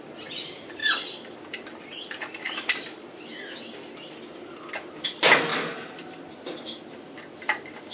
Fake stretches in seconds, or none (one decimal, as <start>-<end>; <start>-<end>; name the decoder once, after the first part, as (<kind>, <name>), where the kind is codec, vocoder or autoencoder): 0.8-4.9 (vocoder, BigVGAN v2); 5.5-6.2

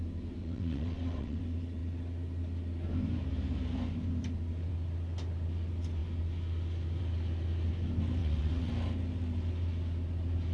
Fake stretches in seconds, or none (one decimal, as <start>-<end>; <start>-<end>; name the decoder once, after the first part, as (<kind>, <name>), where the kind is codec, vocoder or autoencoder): 0.4-1.4 (vocoder, WaveNeXt); 8.2-8.7

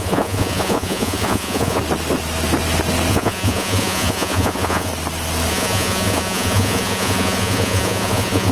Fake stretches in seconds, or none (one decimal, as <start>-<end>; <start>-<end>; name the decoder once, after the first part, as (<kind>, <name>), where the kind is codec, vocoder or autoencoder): 0.0-1.8 (vocoder, Vocos); 3.1-4.9; 5.5-8.5

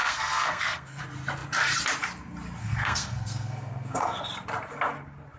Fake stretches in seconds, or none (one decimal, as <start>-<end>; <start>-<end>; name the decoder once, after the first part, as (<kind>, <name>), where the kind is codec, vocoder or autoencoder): 0.0-1.0 (codec, SNAC); 2.6-4.2

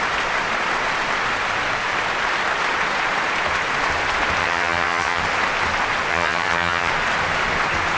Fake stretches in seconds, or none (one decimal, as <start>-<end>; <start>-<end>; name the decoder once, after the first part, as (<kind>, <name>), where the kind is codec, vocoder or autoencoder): 4.4-5.2 (vocoder, HiFi-GAN); 6.1-6.9

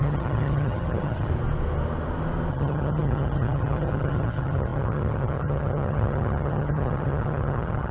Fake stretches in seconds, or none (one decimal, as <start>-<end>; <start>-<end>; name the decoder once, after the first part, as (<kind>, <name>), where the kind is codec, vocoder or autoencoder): 0.0-1.3 (vocoder, HiFi-GAN); 2.5-7.9